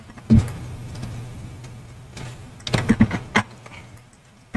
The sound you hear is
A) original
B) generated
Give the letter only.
A